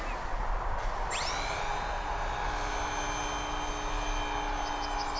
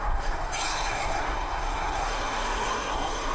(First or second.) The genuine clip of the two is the first